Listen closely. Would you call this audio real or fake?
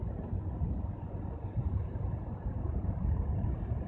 real